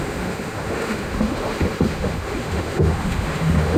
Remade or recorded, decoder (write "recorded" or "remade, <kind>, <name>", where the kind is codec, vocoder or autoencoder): remade, autoencoder, DAC-VAE